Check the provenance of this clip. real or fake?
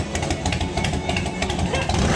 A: real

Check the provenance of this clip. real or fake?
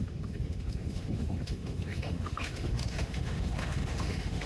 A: fake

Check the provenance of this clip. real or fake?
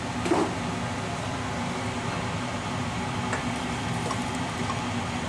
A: real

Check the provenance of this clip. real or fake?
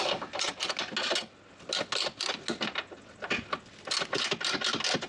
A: real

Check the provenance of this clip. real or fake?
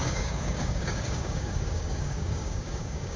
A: fake